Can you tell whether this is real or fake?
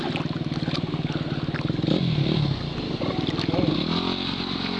real